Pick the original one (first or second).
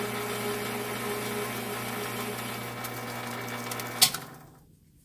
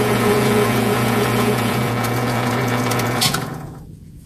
first